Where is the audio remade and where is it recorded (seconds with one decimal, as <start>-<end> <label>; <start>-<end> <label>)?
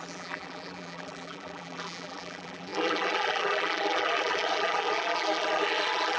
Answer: 0.0-6.2 remade